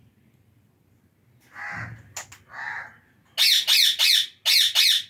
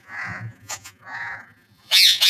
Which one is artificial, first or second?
second